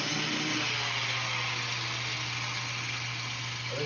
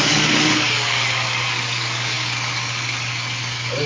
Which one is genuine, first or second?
first